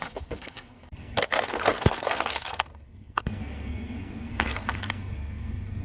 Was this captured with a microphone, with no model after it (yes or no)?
no